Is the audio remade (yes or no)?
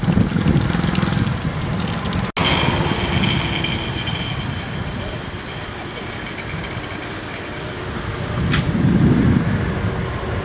no